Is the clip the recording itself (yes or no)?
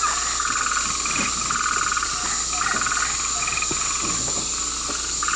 yes